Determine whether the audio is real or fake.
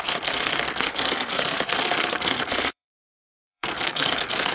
fake